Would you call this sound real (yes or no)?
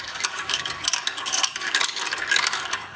no